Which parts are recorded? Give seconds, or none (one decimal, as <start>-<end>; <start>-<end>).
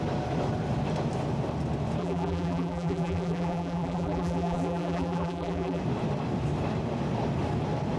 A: 0.0-2.0; 5.8-8.0